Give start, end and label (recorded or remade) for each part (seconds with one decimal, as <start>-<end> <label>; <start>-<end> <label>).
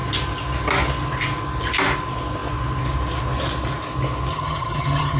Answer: 0.0-4.3 recorded; 4.3-5.2 remade